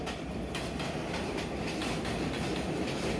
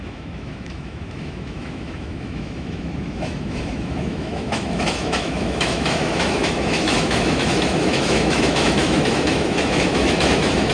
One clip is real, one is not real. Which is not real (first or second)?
second